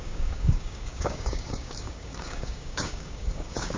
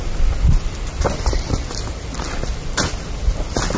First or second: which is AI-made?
first